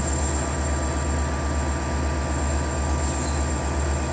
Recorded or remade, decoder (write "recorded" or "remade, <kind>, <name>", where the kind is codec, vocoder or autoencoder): recorded